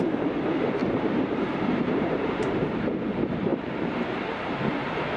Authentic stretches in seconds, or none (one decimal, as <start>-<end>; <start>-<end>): 0.0-0.8; 3.1-3.5; 4.4-5.2